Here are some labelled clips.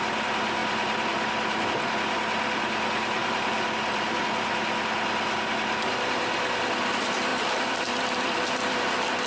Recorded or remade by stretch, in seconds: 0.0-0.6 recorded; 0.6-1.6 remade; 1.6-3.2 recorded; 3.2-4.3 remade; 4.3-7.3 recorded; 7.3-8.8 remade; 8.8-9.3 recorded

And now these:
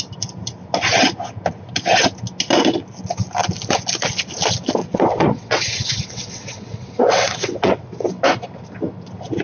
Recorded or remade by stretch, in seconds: 0.0-4.8 recorded; 4.8-8.1 remade; 8.1-9.4 recorded

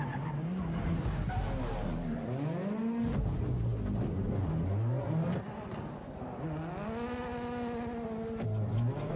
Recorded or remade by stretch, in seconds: 0.0-9.2 recorded